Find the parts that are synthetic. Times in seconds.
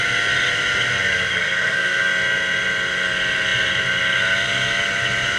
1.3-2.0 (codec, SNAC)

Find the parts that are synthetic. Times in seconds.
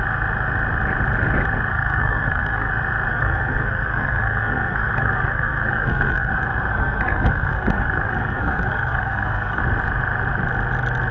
1.7-2.7 (codec, SNAC); 3.1-6.3; 6.7-9.6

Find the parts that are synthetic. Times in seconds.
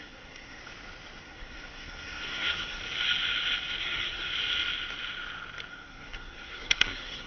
0.0-0.6 (codec, SNAC); 1.2-2.8; 3.8-4.3; 5.7-7.3